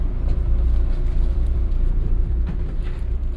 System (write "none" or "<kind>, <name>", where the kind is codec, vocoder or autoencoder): vocoder, BigVGAN v2